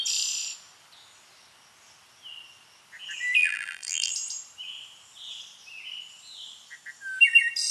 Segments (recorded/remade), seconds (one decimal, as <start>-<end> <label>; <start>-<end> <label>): 0.0-3.4 recorded; 3.4-4.1 remade; 4.1-7.7 recorded